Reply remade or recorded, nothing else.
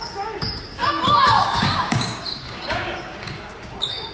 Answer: remade